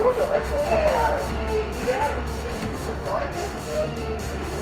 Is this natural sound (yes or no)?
no